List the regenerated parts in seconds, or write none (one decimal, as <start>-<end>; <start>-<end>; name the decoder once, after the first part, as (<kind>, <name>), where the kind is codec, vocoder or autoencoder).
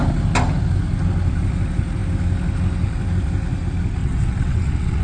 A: 4.0-5.0 (vocoder, WaveNeXt)